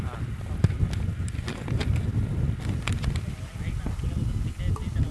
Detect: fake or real real